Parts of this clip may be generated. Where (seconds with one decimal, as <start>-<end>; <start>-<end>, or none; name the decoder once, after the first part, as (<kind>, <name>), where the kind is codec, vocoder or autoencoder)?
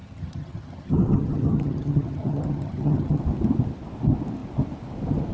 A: 0.0-3.2 (vocoder, HiFi-GAN)